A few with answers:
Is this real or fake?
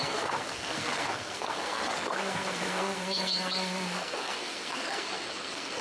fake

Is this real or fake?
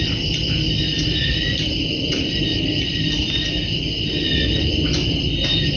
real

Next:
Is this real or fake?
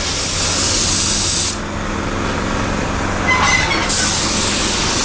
real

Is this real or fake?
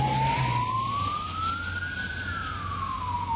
real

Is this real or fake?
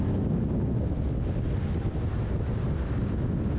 real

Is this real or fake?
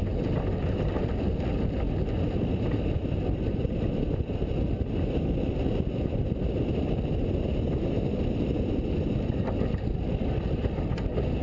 real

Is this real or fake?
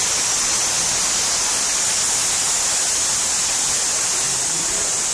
real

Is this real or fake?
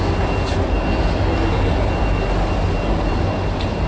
real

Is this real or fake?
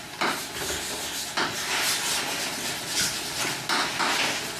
real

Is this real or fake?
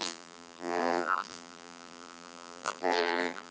fake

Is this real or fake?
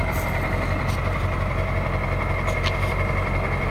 real